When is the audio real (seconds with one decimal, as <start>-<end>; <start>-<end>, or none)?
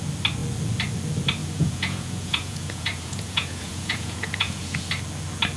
0.0-1.4; 4.8-5.6